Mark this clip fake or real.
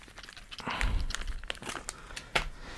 real